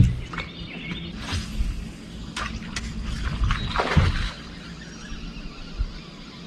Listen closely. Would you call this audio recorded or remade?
recorded